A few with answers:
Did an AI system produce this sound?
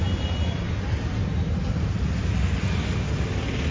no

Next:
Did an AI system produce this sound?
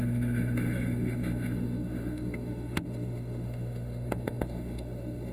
yes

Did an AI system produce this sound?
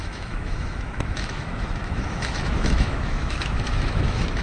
yes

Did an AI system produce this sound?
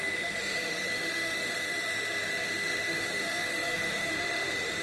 yes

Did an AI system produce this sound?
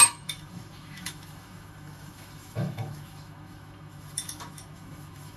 yes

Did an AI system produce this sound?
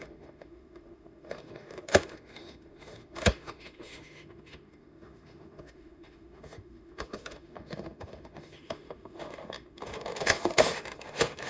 yes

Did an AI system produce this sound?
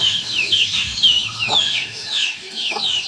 yes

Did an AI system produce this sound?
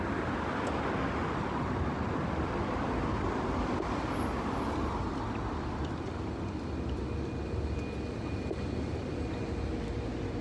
no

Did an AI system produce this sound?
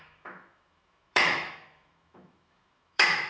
yes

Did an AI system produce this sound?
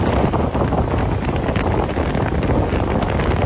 no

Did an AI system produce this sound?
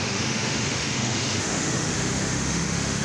yes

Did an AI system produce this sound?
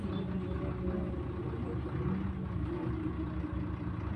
no